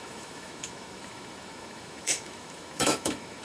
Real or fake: fake